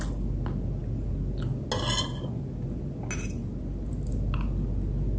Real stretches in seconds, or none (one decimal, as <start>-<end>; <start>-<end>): 0.0-5.2